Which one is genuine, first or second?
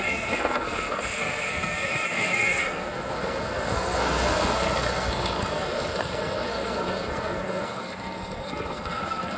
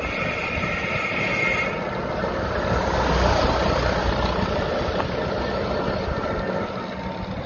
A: second